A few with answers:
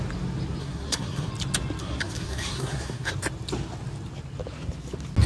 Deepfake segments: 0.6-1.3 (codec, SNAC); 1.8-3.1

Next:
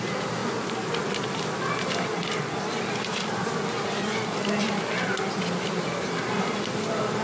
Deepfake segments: none

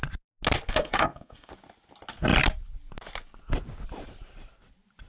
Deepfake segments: 0.7-1.5 (codec, SNAC)

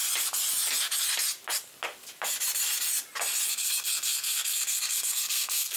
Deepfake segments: 3.5-5.8 (codec, SNAC)

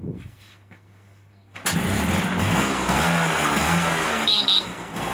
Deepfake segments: 0.0-1.6 (codec, SNAC); 2.4-5.1

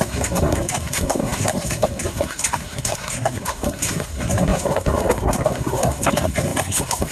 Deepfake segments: 0.0-7.1 (codec, SNAC)